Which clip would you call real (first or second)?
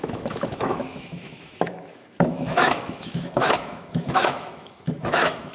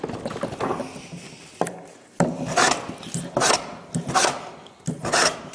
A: second